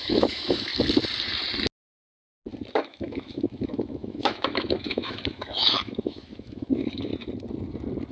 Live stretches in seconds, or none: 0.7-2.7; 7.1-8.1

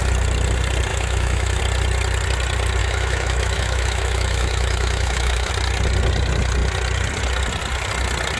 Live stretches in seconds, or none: 0.0-0.9; 1.6-2.8; 5.5-8.4